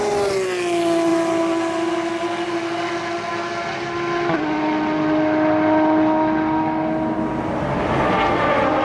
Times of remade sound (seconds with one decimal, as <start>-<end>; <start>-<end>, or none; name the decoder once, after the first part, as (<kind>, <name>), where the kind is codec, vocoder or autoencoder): none